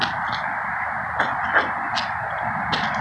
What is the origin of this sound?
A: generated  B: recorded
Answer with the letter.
B